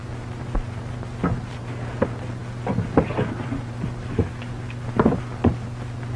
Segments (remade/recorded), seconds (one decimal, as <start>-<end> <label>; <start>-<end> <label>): 0.0-6.2 recorded